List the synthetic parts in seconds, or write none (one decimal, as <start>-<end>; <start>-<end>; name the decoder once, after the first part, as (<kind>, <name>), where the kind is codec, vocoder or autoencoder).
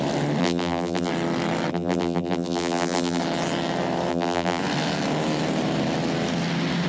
0.4-1.1 (vocoder, BigVGAN v2); 1.7-3.2; 4.1-4.6